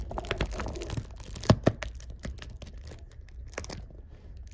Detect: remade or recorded recorded